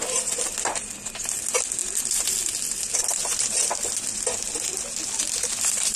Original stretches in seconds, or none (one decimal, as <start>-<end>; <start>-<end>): 0.0-6.0